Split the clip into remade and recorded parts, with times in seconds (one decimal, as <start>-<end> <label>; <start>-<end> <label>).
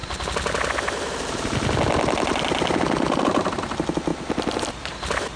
0.0-5.4 recorded